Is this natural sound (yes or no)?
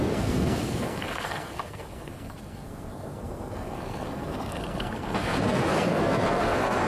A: no